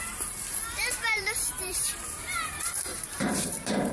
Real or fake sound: fake